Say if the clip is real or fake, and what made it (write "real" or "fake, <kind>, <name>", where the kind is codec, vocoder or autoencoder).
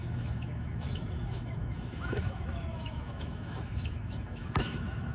fake, autoencoder, DAC-VAE